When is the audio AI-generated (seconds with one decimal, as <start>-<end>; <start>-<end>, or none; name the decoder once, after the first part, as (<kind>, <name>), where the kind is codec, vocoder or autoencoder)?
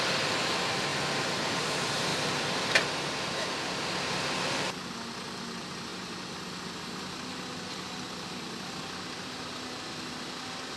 none